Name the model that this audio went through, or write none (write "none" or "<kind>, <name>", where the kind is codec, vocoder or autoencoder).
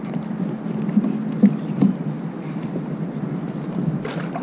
none